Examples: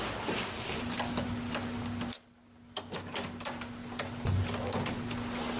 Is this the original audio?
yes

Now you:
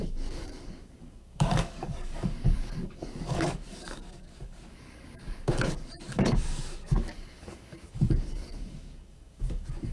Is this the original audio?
no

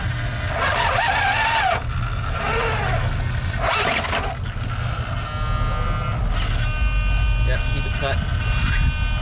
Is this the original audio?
yes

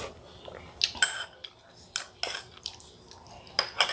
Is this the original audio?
yes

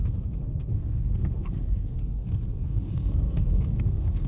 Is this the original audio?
no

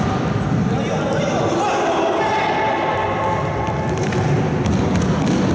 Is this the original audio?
yes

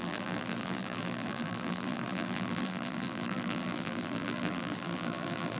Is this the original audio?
no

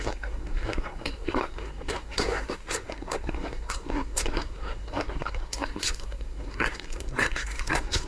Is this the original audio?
no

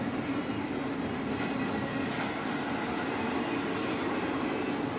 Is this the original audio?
yes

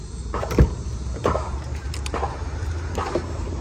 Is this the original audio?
no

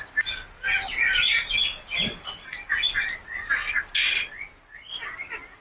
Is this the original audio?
yes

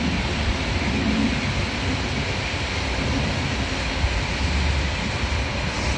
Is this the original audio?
yes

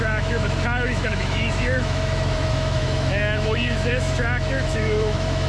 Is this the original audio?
no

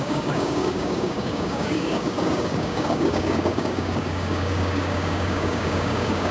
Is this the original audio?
no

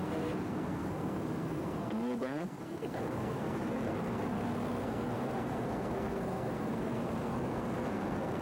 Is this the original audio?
no